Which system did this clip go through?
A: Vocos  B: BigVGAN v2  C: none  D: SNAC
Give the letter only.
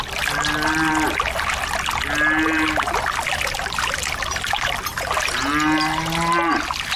C